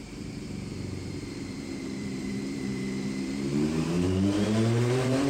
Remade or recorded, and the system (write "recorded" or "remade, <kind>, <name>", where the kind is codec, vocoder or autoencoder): remade, vocoder, BigVGAN v2